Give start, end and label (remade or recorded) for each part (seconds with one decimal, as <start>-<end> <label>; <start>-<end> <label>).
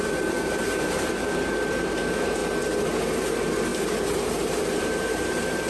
0.0-2.4 remade; 2.4-3.2 recorded; 3.2-5.7 remade